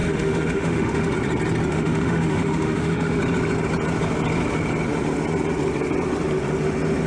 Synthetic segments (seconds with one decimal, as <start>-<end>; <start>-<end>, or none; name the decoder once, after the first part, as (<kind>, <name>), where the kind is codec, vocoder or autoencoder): 0.0-1.1 (autoencoder, DAC-VAE); 1.7-3.2